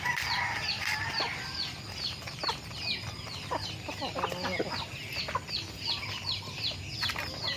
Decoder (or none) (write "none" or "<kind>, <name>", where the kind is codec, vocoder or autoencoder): none